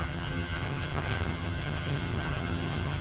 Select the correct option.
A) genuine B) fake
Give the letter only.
B